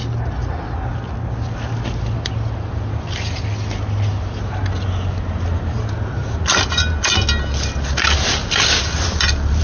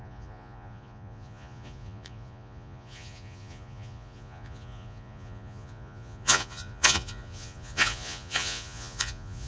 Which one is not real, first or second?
second